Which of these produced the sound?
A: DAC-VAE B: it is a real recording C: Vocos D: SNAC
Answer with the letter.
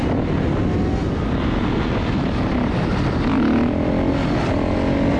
B